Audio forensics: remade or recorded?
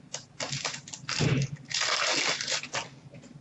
recorded